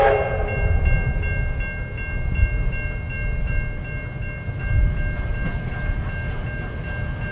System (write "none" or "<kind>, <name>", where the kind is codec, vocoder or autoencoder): none